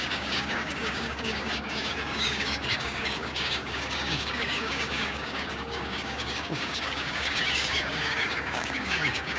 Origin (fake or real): fake